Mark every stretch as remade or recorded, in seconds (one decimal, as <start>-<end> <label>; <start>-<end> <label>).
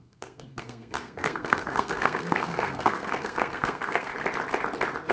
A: 0.0-4.1 remade; 4.1-5.1 recorded